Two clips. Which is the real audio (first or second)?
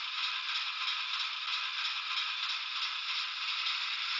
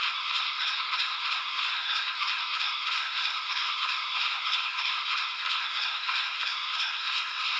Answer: first